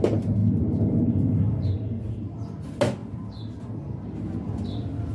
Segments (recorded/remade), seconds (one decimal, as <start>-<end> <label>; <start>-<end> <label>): 0.0-5.1 recorded